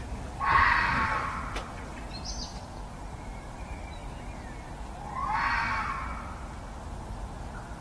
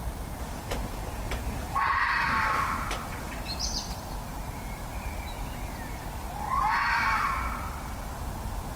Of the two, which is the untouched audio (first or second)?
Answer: first